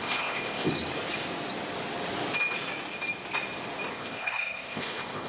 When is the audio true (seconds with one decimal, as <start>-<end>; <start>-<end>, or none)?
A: 0.7-3.9